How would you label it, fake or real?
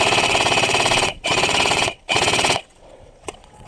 fake